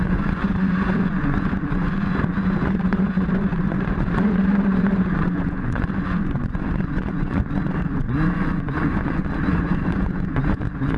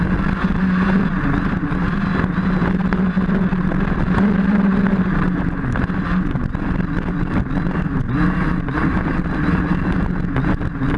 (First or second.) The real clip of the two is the second